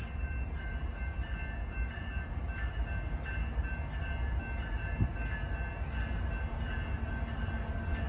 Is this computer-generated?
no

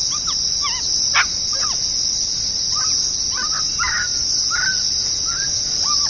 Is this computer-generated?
no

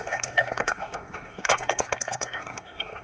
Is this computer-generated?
yes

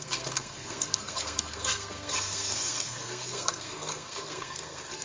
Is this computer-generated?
yes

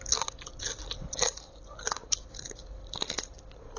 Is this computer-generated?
no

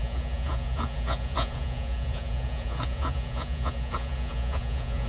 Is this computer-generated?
yes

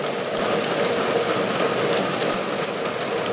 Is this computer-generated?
no